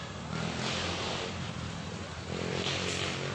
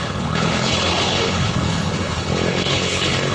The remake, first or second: second